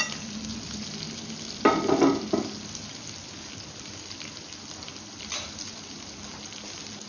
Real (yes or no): yes